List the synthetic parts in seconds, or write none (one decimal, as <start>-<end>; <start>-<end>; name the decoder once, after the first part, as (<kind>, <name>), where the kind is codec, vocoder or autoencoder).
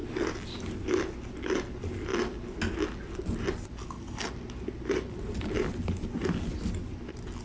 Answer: none